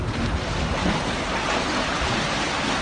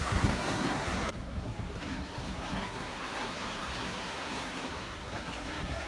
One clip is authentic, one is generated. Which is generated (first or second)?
second